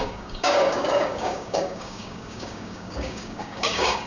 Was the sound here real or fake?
fake